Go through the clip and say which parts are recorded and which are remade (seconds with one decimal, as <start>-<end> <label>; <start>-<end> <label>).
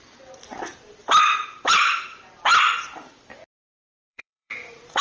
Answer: 0.0-3.8 recorded; 3.8-5.0 remade